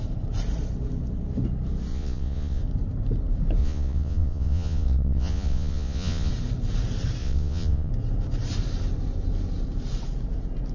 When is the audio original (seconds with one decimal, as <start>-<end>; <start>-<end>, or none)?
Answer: 0.0-1.9; 2.6-3.6; 6.3-7.2; 7.9-10.7